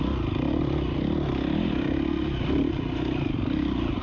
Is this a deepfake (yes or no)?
no